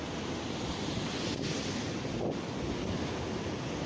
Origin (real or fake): real